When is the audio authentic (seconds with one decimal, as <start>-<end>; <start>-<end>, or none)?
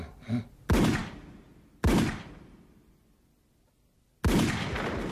0.0-5.1